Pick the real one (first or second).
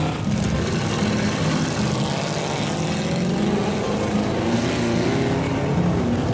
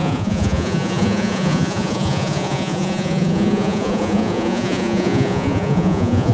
first